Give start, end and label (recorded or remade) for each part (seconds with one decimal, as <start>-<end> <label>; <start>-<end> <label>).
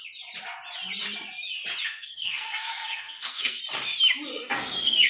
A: 0.0-1.9 recorded; 1.9-3.6 remade; 3.6-4.3 recorded; 4.3-5.1 remade